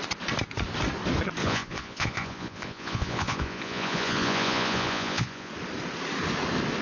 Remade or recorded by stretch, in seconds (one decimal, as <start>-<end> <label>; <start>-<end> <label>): 0.0-1.4 recorded; 1.4-5.5 remade; 5.5-6.8 recorded